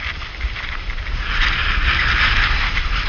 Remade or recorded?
remade